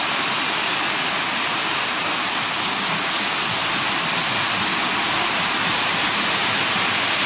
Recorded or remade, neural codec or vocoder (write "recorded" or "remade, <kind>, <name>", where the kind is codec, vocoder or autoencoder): recorded